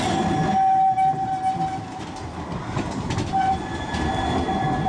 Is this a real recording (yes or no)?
yes